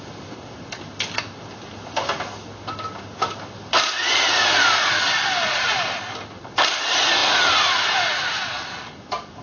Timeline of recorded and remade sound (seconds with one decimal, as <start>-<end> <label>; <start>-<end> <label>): 0.0-9.4 recorded